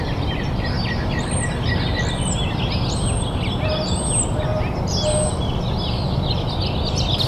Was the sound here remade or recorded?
recorded